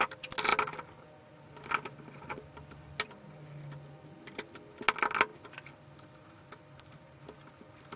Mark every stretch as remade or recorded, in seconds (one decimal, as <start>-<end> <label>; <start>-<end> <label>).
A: 0.0-8.0 recorded